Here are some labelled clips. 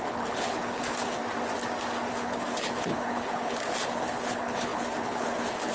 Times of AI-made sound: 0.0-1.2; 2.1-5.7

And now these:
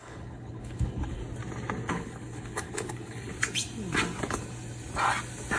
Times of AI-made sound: 0.0-1.2; 1.9-3.3

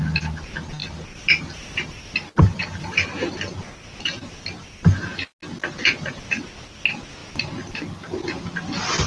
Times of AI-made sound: none

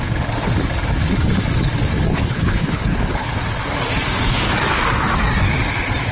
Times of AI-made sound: 2.1-3.4

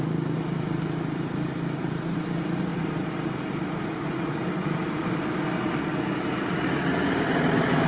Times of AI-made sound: none

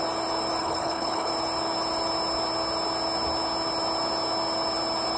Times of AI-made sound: 0.6-1.3